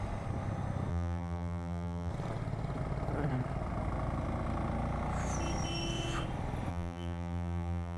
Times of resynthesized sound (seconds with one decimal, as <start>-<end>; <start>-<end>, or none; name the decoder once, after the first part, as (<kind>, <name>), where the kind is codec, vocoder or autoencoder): 0.9-2.1 (vocoder, BigVGAN v2); 6.7-8.0